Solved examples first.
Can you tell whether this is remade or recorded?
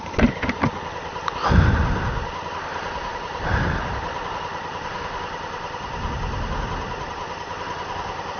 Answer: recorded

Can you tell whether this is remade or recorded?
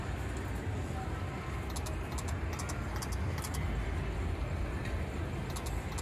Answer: recorded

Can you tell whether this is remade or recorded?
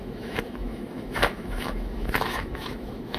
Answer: remade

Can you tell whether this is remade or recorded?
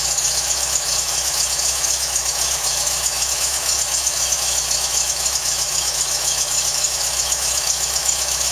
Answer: remade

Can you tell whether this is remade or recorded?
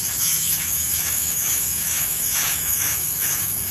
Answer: remade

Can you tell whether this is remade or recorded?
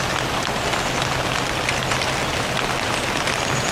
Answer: recorded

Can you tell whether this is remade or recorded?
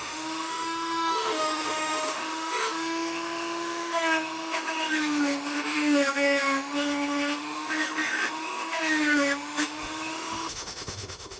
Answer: remade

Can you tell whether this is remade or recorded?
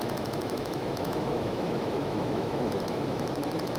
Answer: remade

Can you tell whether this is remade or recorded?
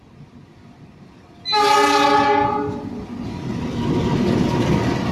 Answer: recorded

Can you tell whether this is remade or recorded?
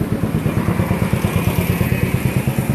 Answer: recorded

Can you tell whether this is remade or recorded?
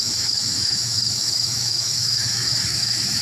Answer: remade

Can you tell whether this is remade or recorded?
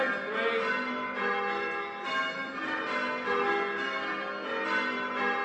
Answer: recorded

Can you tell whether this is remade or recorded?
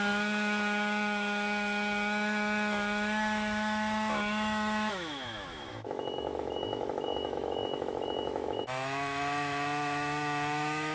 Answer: remade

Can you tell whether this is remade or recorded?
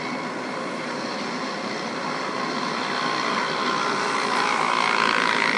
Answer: recorded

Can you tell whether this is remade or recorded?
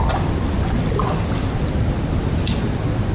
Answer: recorded